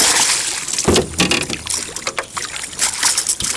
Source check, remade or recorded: recorded